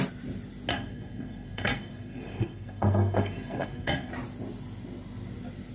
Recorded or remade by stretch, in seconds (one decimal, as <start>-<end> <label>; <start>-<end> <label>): 0.0-0.7 recorded; 0.7-4.1 remade; 4.1-5.7 recorded